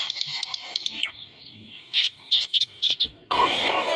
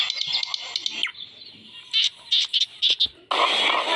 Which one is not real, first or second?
first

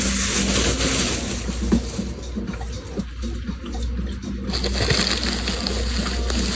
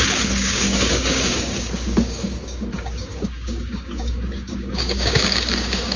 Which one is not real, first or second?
second